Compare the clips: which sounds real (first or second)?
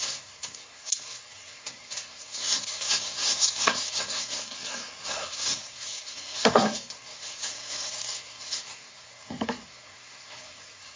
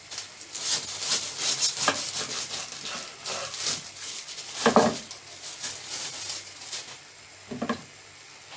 second